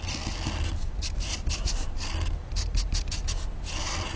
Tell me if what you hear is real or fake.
real